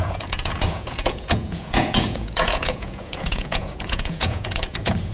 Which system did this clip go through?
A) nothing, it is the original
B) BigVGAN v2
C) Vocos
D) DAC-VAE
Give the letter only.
C